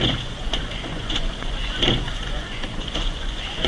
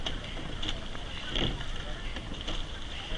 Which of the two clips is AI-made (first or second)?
first